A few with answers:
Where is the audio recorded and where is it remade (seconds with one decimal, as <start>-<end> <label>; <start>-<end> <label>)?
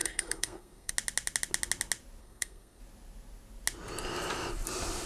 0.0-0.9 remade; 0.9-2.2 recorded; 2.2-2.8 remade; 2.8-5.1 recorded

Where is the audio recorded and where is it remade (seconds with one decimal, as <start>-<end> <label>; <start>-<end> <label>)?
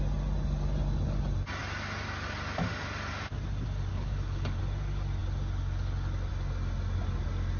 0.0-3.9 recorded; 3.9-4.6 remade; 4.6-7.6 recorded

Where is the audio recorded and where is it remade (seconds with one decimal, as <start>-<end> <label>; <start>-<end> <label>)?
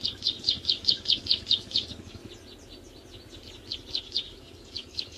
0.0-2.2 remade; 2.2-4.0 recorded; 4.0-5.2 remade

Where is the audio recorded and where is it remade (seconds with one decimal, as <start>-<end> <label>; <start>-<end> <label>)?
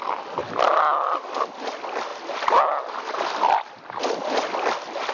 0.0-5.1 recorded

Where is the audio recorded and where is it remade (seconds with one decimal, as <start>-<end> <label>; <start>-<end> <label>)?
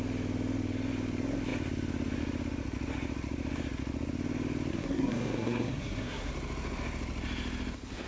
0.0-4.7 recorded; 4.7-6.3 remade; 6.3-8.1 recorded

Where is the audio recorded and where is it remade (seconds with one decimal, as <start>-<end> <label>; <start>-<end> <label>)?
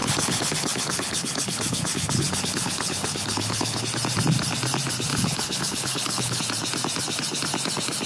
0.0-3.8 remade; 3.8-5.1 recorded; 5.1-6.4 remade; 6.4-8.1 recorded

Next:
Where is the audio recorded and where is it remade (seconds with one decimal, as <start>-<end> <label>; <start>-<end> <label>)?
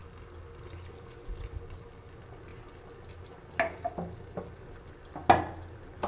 0.0-6.1 recorded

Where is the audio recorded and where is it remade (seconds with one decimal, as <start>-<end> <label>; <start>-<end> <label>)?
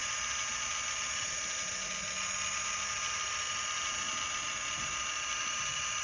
0.0-6.0 recorded